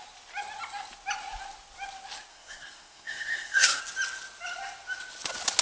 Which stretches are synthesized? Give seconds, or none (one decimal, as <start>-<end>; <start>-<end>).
2.3-3.8